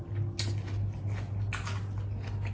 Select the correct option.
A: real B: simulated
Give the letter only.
A